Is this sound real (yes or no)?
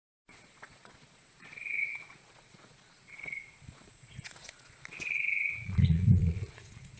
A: no